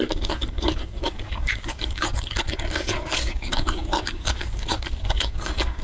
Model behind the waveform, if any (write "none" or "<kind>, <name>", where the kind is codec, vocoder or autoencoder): codec, DAC